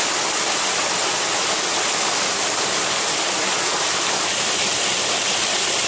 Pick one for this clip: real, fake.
real